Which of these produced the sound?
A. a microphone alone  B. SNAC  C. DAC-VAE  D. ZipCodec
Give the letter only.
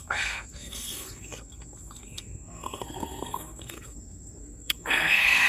B